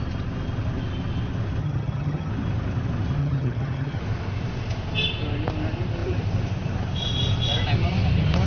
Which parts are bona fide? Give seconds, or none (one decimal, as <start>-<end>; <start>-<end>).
0.0-1.6; 2.3-3.2; 4.0-8.5